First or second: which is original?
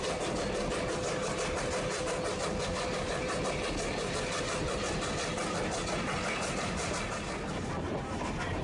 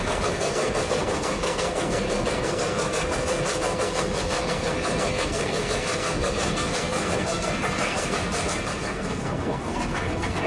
first